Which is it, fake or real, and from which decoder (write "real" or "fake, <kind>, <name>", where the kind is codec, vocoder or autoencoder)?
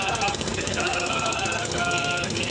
fake, codec, SNAC